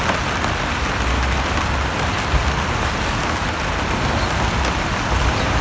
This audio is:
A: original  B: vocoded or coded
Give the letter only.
A